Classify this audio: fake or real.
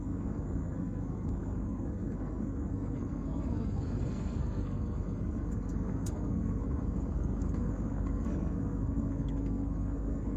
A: fake